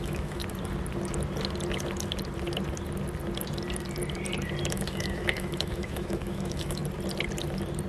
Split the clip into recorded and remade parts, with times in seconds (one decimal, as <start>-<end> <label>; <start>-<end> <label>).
0.0-0.4 remade; 0.4-4.7 recorded; 4.7-6.8 remade; 6.8-7.9 recorded